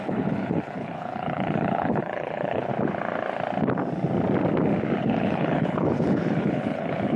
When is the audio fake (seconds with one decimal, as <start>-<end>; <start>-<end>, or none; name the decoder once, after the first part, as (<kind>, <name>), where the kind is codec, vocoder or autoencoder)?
0.0-2.7 (codec, HILCodec); 5.0-7.2